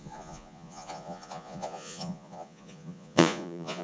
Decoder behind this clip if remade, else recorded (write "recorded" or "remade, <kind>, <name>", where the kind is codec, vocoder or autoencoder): remade, vocoder, Vocos